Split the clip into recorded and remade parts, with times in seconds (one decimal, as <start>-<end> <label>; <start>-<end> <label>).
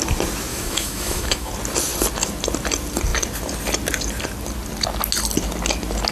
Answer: 0.0-0.5 recorded; 0.5-1.5 remade; 1.5-6.1 recorded